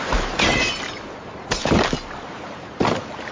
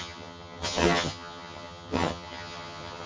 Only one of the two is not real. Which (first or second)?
second